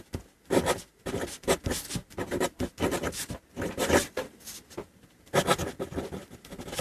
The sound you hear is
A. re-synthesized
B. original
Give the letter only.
B